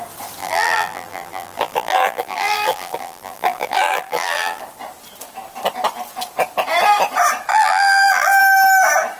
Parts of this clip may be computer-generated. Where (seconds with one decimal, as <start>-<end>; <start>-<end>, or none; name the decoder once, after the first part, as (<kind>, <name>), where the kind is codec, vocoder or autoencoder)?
0.4-4.6 (vocoder, BigVGAN v2); 7.5-8.4